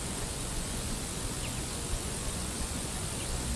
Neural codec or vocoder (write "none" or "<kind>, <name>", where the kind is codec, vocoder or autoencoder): vocoder, Vocos